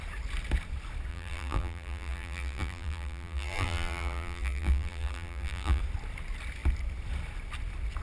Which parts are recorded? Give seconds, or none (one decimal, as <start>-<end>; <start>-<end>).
0.0-1.1; 5.8-8.0